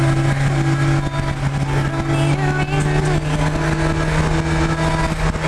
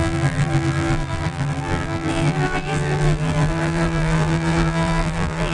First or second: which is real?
first